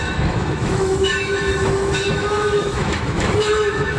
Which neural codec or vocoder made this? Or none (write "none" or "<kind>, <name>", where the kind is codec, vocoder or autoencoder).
autoencoder, DAC-VAE